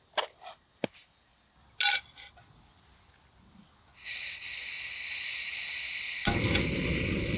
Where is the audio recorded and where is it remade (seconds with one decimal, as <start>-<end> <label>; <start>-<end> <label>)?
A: 0.0-7.4 recorded